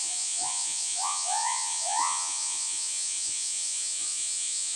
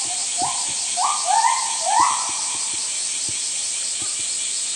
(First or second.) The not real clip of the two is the first